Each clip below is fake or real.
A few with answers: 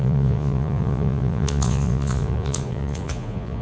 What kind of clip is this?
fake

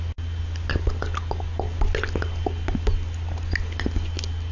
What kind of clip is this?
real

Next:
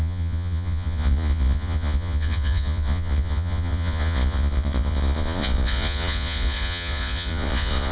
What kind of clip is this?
fake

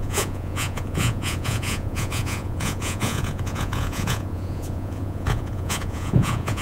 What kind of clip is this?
fake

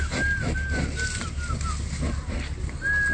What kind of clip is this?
real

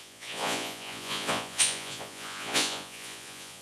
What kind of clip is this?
fake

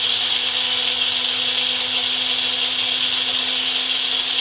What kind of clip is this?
real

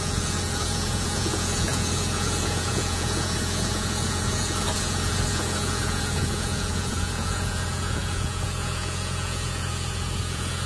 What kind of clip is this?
fake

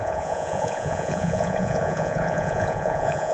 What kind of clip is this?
fake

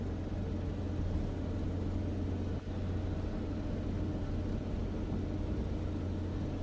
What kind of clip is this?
real